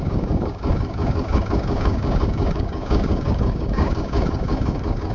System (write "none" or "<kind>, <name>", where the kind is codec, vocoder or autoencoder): codec, DAC